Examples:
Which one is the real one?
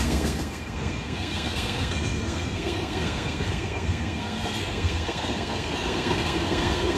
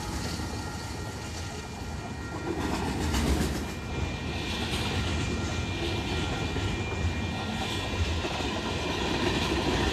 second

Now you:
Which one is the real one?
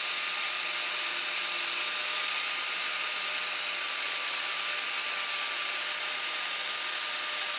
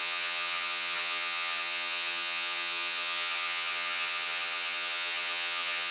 first